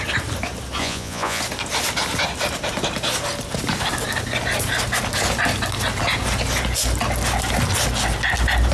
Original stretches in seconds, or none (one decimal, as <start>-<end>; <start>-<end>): 0.0-0.8; 1.4-8.7